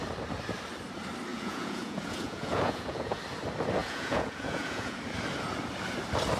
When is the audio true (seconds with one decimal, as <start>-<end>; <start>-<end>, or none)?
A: 0.0-1.3; 3.2-3.8; 5.0-6.4

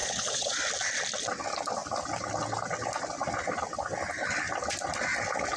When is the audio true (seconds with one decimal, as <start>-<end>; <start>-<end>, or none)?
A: 0.6-5.6